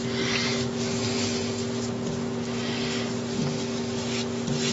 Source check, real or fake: real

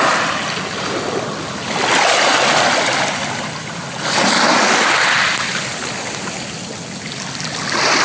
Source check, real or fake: real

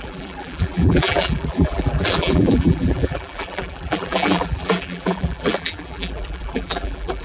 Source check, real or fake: fake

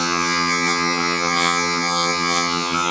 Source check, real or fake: fake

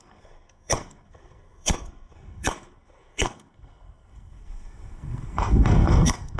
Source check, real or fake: fake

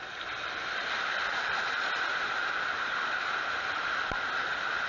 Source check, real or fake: real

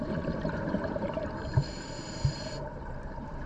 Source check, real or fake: fake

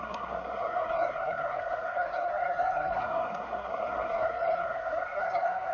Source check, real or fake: fake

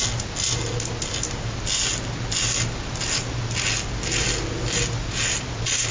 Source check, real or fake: real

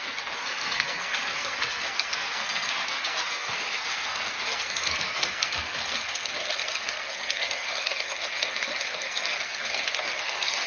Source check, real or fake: fake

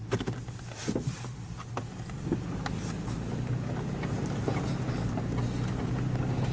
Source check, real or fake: real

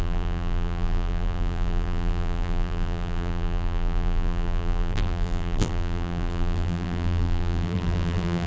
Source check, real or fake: fake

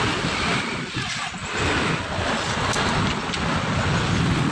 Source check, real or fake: real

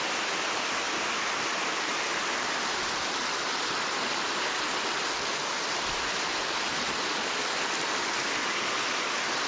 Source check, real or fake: real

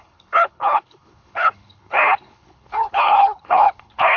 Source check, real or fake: fake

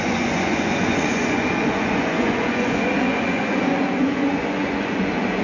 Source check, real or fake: fake